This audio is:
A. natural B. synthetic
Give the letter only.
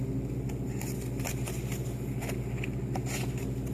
A